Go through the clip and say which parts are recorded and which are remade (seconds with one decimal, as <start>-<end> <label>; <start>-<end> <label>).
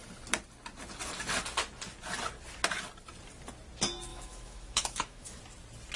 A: 0.0-4.1 recorded; 4.1-5.4 remade; 5.4-6.0 recorded